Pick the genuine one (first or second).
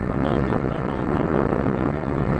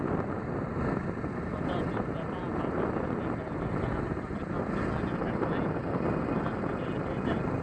second